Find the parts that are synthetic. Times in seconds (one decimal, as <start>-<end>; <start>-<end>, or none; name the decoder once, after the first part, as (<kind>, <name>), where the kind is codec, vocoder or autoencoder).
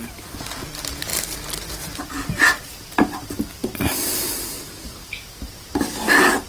none